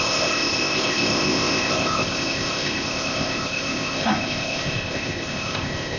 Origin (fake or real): fake